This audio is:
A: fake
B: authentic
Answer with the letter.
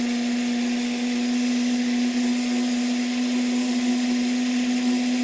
B